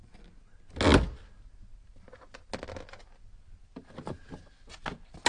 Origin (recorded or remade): recorded